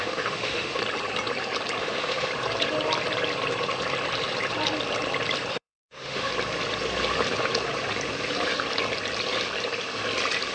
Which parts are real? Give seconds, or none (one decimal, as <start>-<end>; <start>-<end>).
0.8-1.8; 2.3-5.5; 6.3-10.5